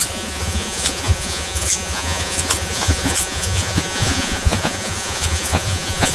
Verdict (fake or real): fake